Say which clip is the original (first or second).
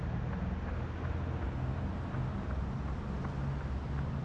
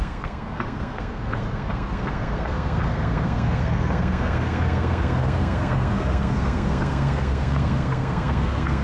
first